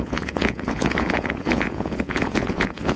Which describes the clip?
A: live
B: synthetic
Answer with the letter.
B